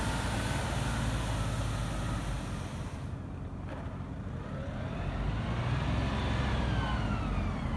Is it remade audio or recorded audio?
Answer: recorded